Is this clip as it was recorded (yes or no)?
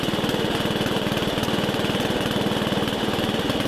no